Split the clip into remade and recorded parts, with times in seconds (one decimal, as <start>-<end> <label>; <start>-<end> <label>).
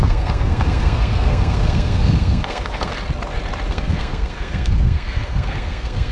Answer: 0.0-2.9 remade; 2.9-3.7 recorded; 3.7-6.1 remade